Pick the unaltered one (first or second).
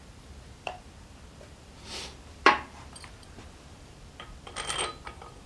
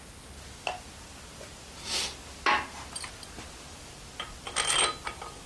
second